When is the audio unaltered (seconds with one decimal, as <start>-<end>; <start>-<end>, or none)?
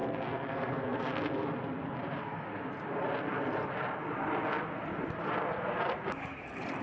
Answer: 1.3-6.8